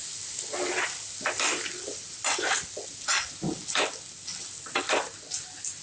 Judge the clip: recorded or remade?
recorded